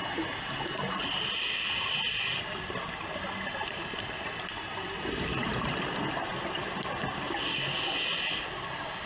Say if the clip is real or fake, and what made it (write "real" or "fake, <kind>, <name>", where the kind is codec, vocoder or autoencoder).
real